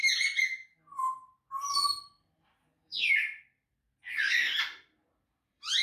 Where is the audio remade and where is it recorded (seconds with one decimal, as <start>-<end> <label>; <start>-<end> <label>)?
0.0-2.0 recorded; 2.0-2.9 remade; 2.9-5.1 recorded; 5.1-5.8 remade